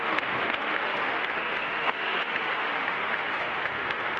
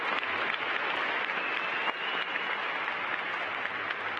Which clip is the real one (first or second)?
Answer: second